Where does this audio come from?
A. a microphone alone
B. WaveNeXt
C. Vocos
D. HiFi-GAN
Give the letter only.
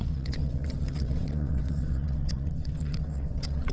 B